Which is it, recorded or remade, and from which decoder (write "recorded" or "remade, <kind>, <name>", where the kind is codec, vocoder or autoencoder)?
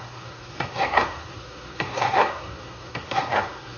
remade, codec, SNAC